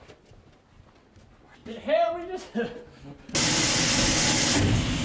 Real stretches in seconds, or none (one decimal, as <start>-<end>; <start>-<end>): 0.0-5.0